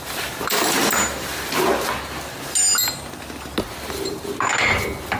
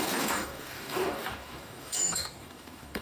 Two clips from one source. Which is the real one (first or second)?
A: first